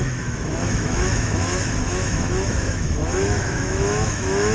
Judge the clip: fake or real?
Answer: fake